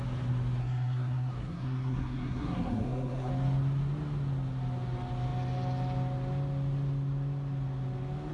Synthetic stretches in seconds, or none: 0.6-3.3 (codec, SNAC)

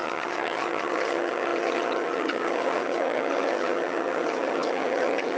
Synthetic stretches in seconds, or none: 0.0-5.4 (vocoder, HiFi-GAN)